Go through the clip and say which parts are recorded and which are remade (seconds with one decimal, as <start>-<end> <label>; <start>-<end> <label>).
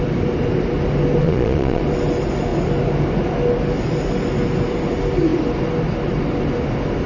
0.0-1.2 recorded; 1.2-1.8 remade; 1.8-7.1 recorded